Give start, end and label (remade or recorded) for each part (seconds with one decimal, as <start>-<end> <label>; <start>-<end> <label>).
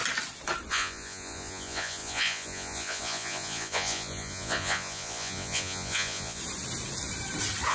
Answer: 0.0-0.7 recorded; 0.7-6.4 remade; 6.4-7.7 recorded